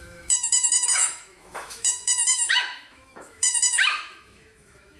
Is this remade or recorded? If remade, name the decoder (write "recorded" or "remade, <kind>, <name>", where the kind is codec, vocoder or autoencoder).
remade, autoencoder, DAC-VAE